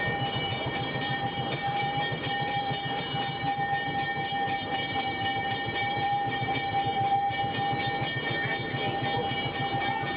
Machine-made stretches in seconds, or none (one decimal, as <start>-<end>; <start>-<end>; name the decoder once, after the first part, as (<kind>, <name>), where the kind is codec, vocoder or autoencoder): 0.5-3.0 (vocoder, BigVGAN v2); 4.6-5.2; 5.8-7.4